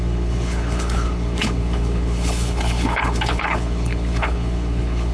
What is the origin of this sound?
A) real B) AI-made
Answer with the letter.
B